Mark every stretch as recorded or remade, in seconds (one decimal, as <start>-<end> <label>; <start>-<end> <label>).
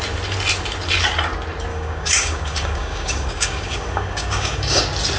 0.0-1.7 recorded; 1.7-4.8 remade; 4.8-5.2 recorded